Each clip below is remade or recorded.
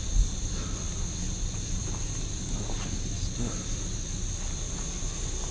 recorded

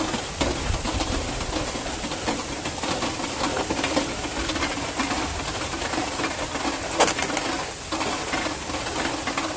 recorded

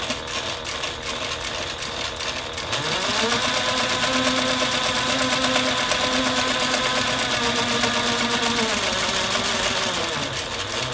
recorded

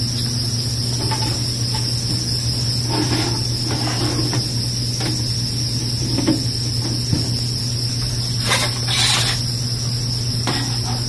recorded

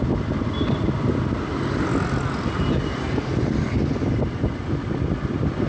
recorded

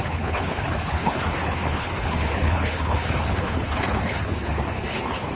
remade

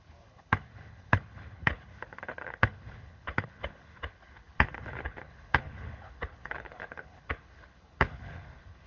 remade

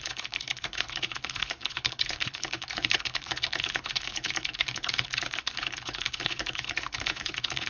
remade